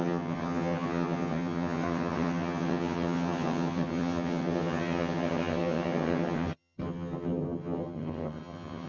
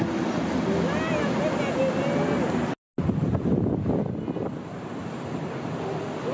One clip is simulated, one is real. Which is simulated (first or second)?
first